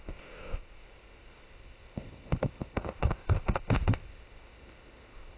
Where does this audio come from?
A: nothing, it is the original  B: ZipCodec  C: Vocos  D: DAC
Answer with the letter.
B